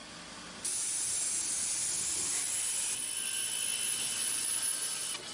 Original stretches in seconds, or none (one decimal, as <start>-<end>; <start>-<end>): 0.0-5.3